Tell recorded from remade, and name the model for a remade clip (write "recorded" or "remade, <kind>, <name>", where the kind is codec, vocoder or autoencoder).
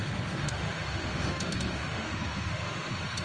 remade, autoencoder, DAC-VAE